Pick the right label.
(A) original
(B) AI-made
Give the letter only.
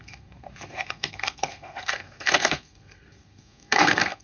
B